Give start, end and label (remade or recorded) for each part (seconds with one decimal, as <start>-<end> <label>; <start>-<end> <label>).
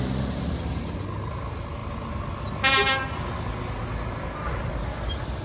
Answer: 0.0-5.4 recorded